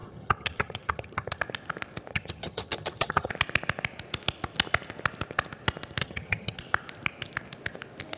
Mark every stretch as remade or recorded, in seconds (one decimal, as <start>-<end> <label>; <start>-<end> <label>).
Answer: 0.0-1.4 remade; 1.4-2.1 recorded; 2.1-3.3 remade; 3.3-6.0 recorded; 6.0-6.6 remade; 6.6-8.2 recorded

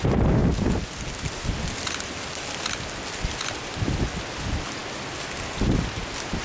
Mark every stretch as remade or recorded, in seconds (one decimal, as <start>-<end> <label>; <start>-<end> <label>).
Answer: 0.0-6.4 recorded

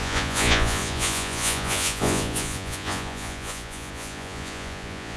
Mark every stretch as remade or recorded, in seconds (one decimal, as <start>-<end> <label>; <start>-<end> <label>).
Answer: 0.0-5.2 remade